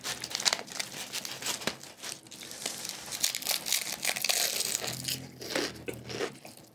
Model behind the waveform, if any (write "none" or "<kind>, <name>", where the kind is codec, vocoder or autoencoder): none